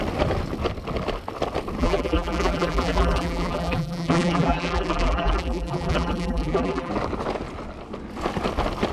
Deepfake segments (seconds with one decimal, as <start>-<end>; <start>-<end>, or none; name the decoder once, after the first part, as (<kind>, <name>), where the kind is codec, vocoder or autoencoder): 1.8-6.9 (vocoder, BigVGAN v2)